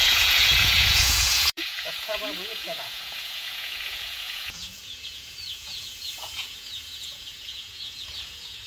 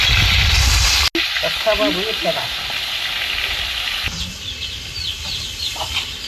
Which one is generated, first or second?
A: first